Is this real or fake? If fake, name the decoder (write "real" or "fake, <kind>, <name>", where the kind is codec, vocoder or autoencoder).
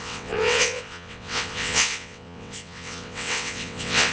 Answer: fake, vocoder, WaveNeXt